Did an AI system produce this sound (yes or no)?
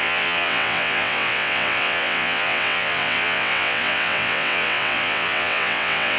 yes